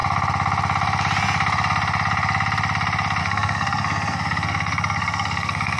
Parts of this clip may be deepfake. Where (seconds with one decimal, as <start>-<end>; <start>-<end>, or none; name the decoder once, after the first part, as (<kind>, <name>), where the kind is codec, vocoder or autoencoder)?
3.2-5.8 (codec, SNAC)